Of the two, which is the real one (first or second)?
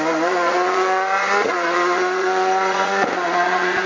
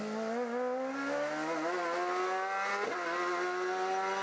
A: second